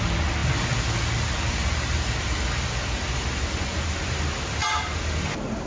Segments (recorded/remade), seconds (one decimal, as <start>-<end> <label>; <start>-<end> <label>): 0.0-5.7 recorded